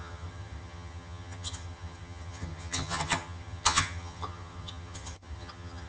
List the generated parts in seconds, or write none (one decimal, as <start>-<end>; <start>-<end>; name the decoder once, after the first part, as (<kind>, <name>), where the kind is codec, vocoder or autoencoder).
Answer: 0.0-5.9 (vocoder, HiFi-GAN)